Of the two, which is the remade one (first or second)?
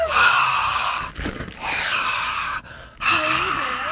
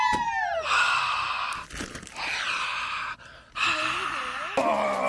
first